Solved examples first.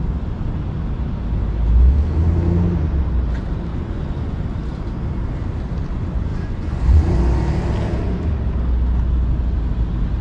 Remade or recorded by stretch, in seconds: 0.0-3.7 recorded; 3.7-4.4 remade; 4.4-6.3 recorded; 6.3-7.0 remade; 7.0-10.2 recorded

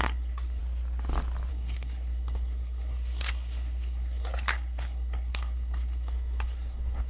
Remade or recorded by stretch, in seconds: 0.0-0.6 remade; 0.6-1.5 recorded; 1.5-7.1 remade

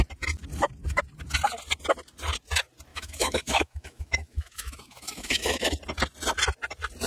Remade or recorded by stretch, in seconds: 0.0-2.9 recorded; 2.9-5.8 remade; 5.8-7.1 recorded